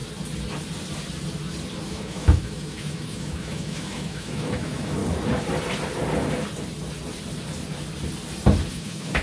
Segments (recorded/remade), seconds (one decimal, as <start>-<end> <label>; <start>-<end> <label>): 0.0-1.9 recorded; 1.9-5.0 remade; 5.0-8.7 recorded; 8.7-9.2 remade